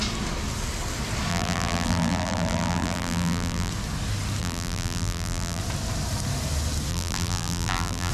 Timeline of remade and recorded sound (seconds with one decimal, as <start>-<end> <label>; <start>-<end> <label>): 0.0-1.3 recorded; 1.3-3.7 remade; 3.7-4.4 recorded; 4.4-5.6 remade; 5.6-6.9 recorded; 6.9-8.1 remade